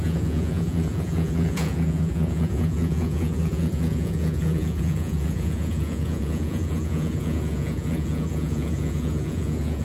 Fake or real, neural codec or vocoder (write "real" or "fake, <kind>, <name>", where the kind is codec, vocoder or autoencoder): fake, vocoder, Vocos